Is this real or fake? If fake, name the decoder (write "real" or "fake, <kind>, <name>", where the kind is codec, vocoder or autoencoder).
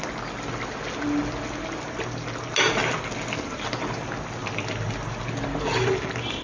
real